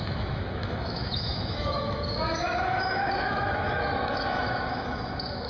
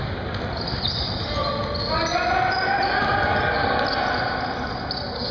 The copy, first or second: first